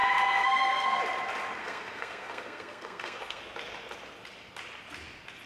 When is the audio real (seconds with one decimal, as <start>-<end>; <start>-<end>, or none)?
1.0-1.6; 3.4-5.5